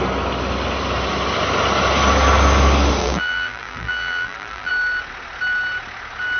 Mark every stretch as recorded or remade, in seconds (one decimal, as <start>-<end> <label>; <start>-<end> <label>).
0.0-3.0 recorded; 3.0-4.7 remade; 4.7-6.4 recorded